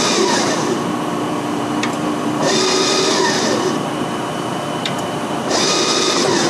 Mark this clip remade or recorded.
remade